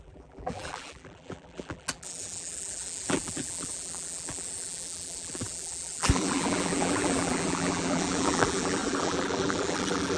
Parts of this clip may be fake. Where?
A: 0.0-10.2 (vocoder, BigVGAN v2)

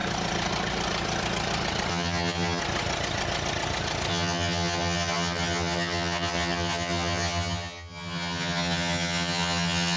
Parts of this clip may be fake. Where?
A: 1.9-2.6 (vocoder, HiFi-GAN); 4.1-10.0

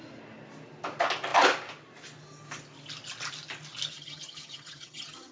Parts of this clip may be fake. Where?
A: 3.9-5.3 (vocoder, HiFi-GAN)

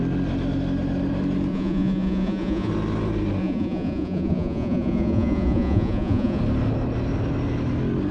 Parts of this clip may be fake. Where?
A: 1.5-2.7 (vocoder, Vocos); 3.4-6.4

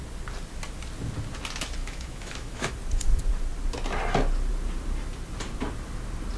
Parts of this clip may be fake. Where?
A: 1.8-2.7 (autoencoder, DAC-VAE)